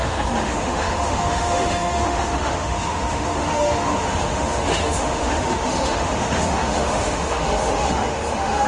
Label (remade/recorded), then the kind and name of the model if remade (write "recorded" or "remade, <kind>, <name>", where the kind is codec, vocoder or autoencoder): remade, autoencoder, DAC-VAE